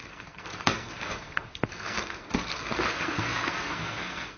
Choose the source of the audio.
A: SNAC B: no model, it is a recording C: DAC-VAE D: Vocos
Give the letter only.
A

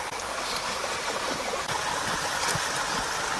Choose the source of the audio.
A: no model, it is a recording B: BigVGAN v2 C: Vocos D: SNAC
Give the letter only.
A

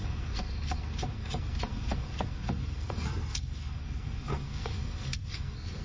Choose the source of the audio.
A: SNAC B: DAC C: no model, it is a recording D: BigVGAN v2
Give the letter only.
A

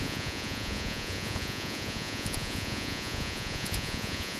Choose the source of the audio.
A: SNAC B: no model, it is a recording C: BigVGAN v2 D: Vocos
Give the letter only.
D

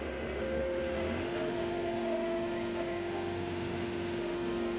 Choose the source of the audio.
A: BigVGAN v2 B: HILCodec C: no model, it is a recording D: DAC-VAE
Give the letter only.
D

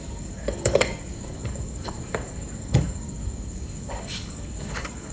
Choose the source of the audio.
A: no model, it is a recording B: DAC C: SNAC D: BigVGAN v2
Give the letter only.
B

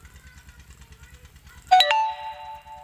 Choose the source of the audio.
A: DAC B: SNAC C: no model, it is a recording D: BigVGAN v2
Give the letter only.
C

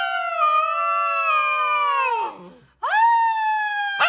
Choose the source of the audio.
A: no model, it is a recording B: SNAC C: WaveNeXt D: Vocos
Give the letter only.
A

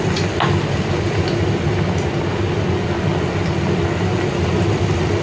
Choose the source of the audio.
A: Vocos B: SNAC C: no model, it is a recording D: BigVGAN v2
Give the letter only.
C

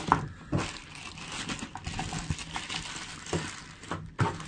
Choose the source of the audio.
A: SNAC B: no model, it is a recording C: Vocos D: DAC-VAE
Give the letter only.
B